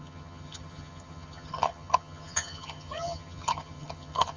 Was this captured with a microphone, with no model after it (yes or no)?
no